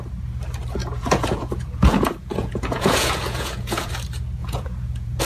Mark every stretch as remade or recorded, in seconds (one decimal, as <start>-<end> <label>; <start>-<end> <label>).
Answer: 0.0-0.8 recorded; 0.8-3.9 remade; 3.9-4.4 recorded; 4.4-5.2 remade